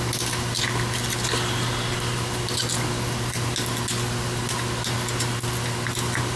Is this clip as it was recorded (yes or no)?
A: yes